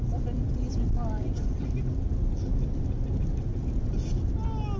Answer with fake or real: real